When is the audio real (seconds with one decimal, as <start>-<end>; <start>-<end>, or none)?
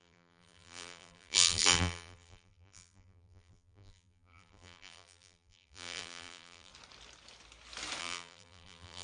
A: 6.7-8.0